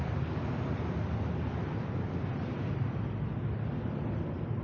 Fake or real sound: real